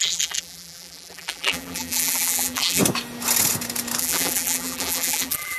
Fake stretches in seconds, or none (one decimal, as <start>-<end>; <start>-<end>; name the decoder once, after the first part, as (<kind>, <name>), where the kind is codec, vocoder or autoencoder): 0.0-2.8 (vocoder, BigVGAN v2); 4.0-5.6